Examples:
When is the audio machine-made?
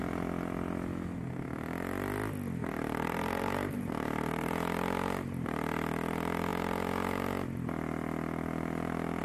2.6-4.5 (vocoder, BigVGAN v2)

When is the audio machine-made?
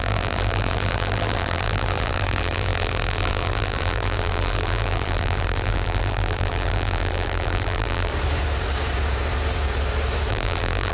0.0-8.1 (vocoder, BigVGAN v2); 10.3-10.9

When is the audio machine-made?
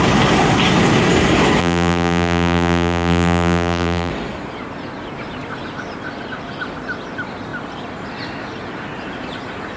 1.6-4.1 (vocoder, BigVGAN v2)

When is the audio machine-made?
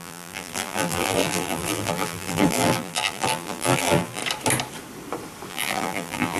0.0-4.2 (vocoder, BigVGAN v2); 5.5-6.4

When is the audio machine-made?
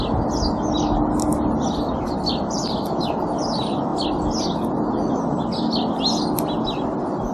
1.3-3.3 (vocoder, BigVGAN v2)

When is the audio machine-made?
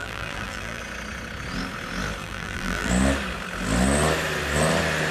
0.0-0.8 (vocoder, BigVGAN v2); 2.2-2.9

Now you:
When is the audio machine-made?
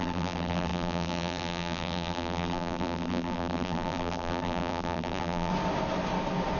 0.0-5.5 (vocoder, BigVGAN v2)